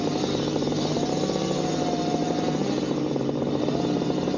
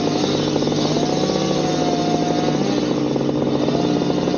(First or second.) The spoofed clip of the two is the first